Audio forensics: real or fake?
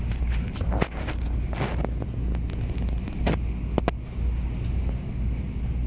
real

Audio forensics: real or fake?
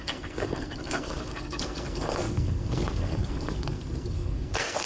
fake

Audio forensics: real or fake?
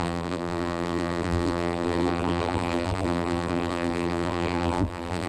fake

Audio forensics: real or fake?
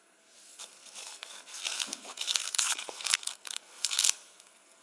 fake